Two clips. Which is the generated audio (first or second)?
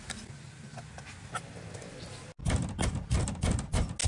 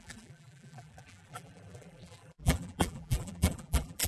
second